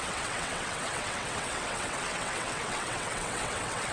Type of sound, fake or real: fake